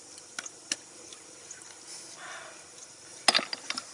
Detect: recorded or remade recorded